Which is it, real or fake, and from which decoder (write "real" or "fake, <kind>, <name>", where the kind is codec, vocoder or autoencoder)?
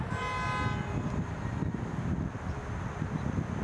real